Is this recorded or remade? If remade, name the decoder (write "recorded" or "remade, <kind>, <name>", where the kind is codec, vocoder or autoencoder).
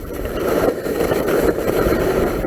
remade, vocoder, BigVGAN v2